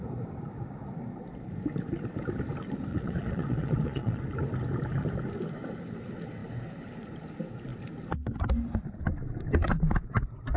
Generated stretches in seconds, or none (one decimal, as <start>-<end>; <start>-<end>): 2.9-4.2